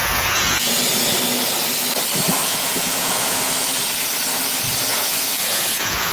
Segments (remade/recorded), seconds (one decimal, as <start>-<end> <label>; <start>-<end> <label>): 0.0-0.7 remade; 0.7-2.4 recorded; 2.4-3.5 remade; 3.5-4.9 recorded; 4.9-6.1 remade